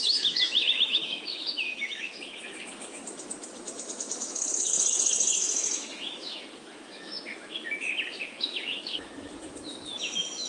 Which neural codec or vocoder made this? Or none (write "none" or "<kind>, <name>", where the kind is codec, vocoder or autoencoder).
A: autoencoder, DAC-VAE